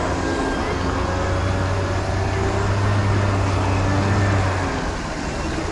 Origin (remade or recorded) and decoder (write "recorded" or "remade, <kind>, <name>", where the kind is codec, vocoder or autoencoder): recorded